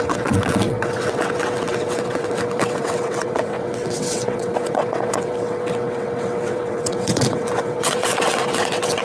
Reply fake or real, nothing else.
fake